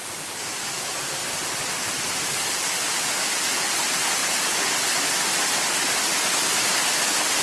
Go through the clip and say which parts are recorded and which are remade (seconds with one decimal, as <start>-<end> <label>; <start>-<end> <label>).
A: 0.0-7.4 recorded